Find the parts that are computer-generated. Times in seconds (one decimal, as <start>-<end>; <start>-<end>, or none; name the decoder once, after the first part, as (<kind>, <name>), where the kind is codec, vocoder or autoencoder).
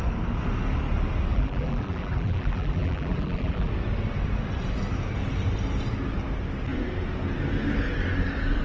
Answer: 1.3-3.7 (vocoder, BigVGAN v2)